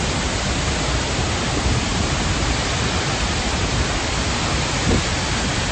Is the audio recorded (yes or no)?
yes